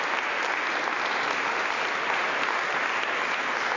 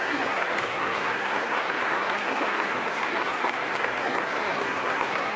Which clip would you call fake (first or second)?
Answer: second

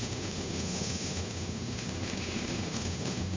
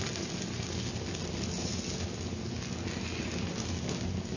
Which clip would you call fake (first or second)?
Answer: first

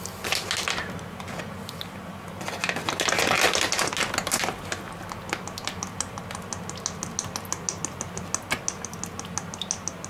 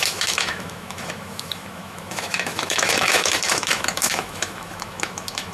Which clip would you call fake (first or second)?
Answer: second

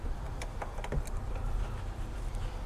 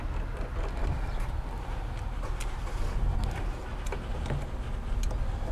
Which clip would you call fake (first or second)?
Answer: first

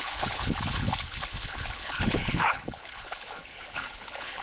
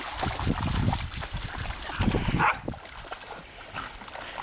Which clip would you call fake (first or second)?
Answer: first